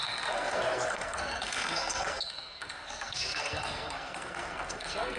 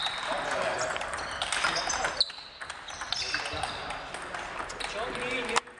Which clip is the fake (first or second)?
first